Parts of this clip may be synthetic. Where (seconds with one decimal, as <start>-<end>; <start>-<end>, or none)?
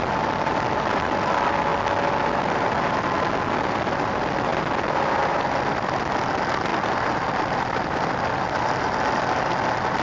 0.0-1.7; 2.7-10.0